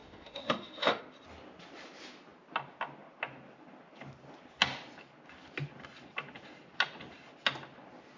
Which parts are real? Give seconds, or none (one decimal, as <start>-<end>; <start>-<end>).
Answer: 1.0-8.2

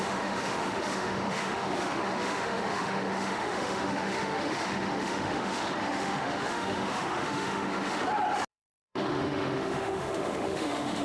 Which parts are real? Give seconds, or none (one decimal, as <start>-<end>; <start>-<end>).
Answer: 8.0-8.5

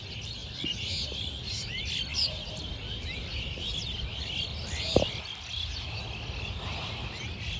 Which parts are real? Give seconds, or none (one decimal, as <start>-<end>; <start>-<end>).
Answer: 0.0-7.6

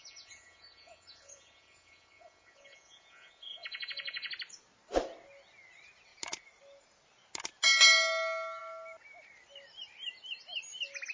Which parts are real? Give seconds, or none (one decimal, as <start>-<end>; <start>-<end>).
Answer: 4.3-11.1